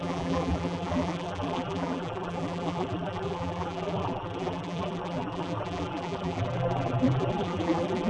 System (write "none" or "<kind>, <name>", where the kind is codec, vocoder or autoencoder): vocoder, BigVGAN v2